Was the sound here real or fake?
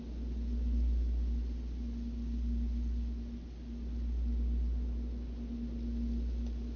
real